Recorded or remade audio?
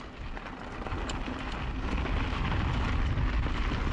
recorded